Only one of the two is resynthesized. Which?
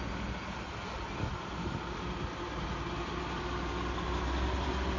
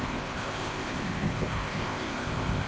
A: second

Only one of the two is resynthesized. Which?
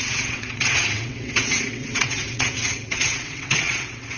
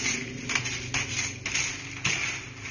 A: first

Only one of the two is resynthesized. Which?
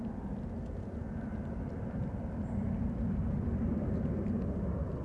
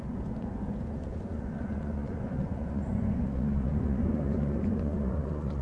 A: second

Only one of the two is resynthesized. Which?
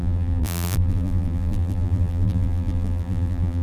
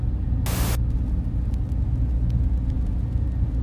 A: first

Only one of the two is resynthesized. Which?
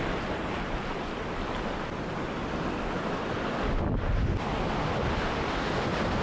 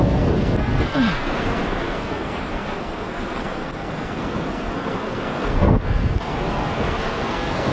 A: second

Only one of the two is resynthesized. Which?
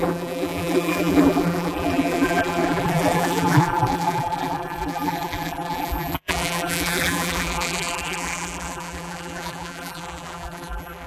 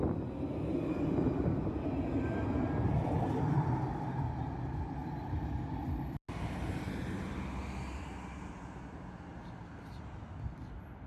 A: first